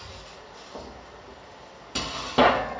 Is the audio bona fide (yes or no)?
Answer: yes